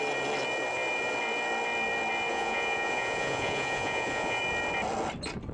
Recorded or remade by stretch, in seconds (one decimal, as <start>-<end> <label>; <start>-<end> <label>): 0.0-2.3 recorded; 2.3-4.4 remade; 4.4-5.5 recorded